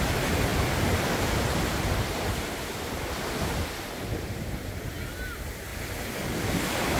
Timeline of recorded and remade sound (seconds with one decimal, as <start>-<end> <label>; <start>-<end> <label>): 0.0-0.5 recorded; 0.5-3.4 remade; 3.4-7.0 recorded